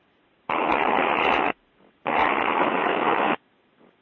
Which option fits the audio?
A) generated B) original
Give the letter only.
A